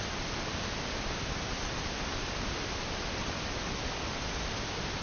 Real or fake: real